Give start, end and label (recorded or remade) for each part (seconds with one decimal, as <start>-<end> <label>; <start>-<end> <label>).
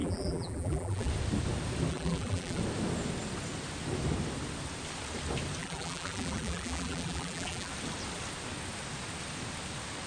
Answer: 0.0-1.1 remade; 1.1-1.9 recorded; 1.9-2.6 remade; 2.6-5.6 recorded; 5.6-7.7 remade; 7.7-10.1 recorded